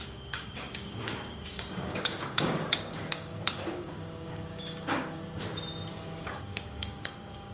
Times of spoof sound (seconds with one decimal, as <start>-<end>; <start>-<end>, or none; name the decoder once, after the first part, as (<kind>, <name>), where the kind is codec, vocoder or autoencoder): 0.0-5.2 (codec, DAC); 5.9-7.5